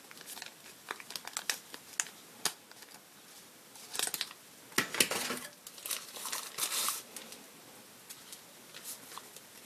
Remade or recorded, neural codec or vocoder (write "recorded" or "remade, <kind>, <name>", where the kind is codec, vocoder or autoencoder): recorded